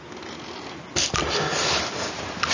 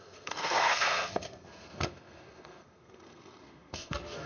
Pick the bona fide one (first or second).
first